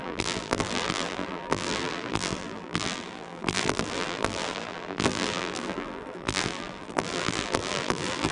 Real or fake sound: fake